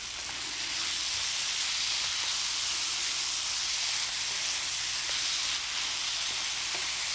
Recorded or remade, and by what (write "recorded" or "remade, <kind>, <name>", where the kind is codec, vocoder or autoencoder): recorded